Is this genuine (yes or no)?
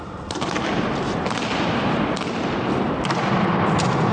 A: no